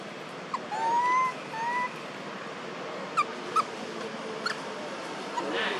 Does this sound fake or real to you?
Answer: real